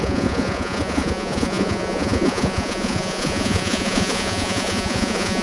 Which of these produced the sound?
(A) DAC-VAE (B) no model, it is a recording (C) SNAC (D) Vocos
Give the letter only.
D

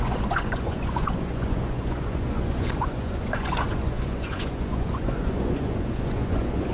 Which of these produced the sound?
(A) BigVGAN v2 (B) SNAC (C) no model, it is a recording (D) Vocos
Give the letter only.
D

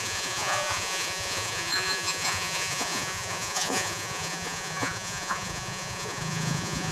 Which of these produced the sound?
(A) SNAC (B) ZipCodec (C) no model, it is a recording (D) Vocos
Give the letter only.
D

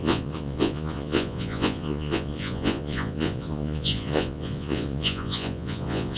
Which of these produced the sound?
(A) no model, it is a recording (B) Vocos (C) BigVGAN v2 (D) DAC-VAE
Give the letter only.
B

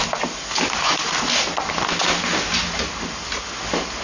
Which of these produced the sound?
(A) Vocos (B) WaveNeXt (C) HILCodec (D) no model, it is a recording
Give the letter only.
D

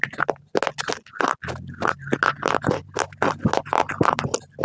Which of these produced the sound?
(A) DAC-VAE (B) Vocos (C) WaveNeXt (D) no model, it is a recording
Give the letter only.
D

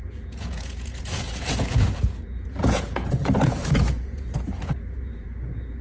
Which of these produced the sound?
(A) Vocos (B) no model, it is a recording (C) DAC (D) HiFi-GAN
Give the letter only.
A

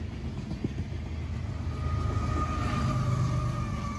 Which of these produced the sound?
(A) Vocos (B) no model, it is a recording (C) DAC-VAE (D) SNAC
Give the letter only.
B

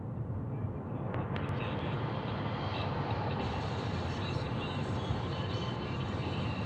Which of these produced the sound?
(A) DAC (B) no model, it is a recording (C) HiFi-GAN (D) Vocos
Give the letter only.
B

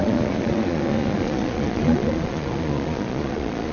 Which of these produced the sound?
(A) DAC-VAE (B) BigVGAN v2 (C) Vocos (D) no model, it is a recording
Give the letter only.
C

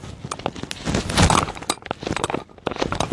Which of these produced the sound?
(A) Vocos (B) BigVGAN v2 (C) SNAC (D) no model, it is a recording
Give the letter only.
D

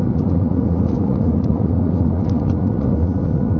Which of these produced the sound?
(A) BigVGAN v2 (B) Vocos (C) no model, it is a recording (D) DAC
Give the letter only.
B